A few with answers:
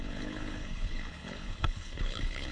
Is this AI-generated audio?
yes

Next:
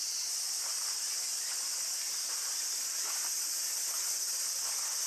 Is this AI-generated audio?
no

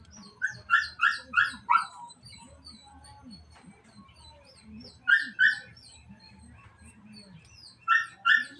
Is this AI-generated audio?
no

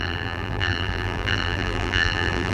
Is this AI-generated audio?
yes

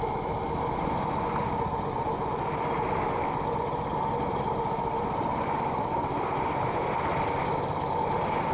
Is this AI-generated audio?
no